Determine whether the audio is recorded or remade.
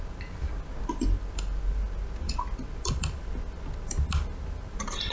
recorded